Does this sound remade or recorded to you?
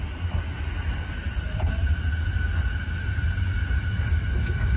recorded